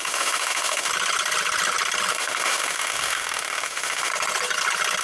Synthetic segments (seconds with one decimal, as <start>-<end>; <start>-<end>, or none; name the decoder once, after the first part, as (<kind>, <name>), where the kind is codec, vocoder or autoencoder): 0.0-0.9 (autoencoder, DAC-VAE); 2.1-4.1